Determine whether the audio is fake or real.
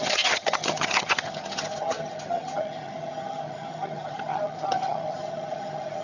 fake